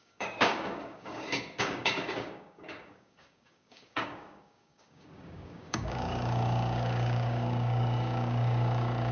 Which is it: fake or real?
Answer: fake